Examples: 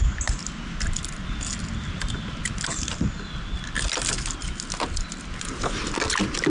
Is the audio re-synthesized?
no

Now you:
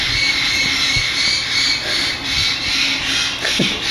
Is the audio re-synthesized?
no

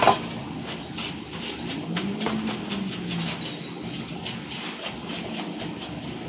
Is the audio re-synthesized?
no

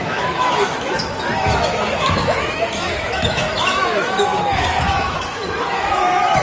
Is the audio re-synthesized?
yes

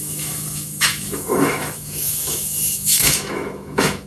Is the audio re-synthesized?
yes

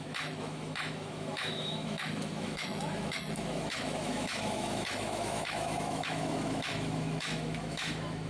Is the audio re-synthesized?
yes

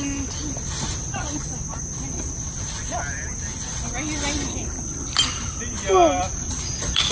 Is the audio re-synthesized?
no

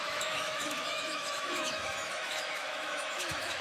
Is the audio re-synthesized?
yes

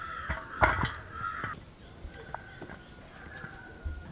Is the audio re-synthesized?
no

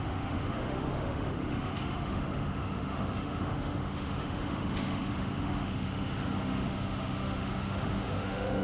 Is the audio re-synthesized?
yes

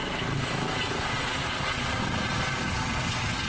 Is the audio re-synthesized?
no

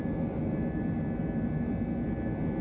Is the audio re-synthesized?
no